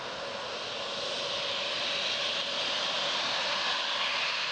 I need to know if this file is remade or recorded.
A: recorded